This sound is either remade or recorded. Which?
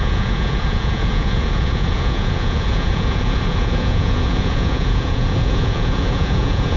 remade